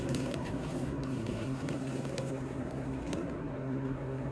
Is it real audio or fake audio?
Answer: fake